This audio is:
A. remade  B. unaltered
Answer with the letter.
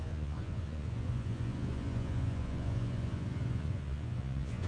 A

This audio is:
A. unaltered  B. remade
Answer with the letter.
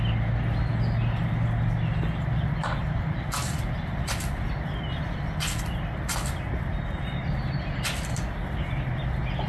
A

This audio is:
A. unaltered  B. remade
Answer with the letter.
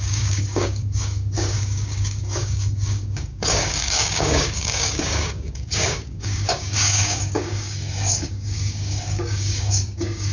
B